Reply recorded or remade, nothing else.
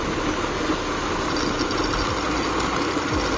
recorded